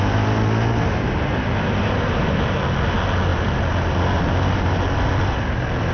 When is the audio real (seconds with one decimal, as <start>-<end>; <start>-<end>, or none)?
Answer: 0.0-5.9